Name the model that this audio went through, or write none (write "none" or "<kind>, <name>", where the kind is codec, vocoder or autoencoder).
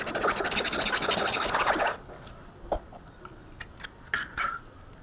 none